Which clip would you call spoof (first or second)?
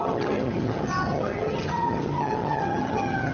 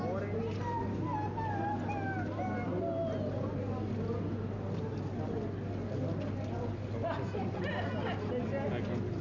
first